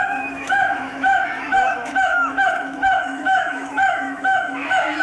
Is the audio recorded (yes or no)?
no